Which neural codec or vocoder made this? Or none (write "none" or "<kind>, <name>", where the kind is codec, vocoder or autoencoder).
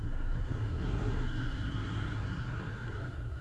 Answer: codec, SNAC